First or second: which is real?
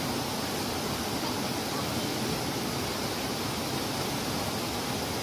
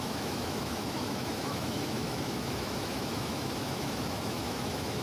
first